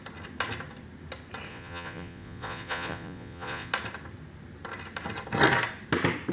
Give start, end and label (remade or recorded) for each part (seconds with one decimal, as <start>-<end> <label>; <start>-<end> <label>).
0.0-1.5 recorded; 1.5-3.7 remade; 3.7-6.3 recorded

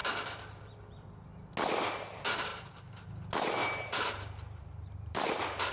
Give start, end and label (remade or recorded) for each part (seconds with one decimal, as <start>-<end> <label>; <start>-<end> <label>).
0.0-2.5 recorded; 2.5-3.1 remade; 3.1-3.6 recorded; 3.6-5.7 remade

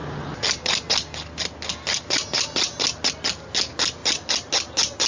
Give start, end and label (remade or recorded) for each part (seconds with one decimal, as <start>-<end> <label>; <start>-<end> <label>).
0.0-5.1 recorded

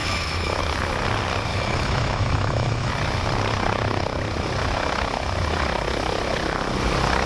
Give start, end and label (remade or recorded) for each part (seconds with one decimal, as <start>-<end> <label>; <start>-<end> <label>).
0.0-0.6 remade; 0.6-1.5 recorded; 1.5-2.9 remade; 2.9-7.3 recorded

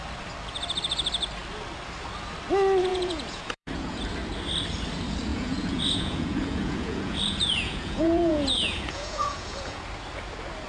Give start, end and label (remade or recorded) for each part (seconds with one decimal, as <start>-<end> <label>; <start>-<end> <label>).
0.0-2.9 recorded; 2.9-4.0 remade; 4.0-5.3 recorded; 5.3-9.8 remade; 9.8-10.7 recorded